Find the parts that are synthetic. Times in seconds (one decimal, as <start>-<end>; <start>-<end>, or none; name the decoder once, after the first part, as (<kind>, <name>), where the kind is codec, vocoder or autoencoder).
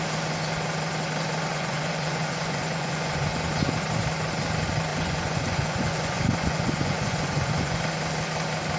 1.5-3.5 (vocoder, Vocos); 4.9-7.8